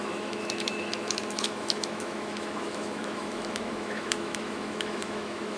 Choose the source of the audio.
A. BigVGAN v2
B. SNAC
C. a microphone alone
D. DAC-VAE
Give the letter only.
D